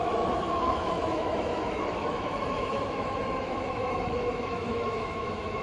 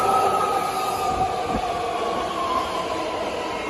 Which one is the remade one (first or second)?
first